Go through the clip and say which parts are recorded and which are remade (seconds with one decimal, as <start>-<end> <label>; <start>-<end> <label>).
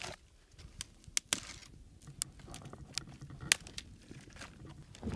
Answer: 0.0-5.2 recorded